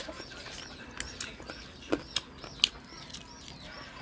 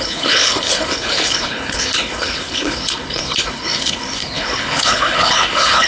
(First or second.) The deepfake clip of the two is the second